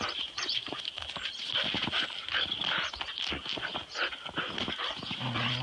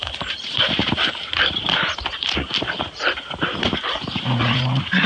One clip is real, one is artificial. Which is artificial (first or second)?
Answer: second